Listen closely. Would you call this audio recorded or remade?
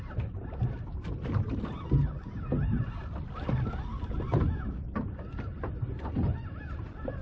recorded